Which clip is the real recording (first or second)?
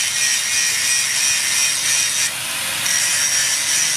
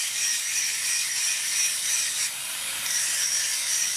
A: first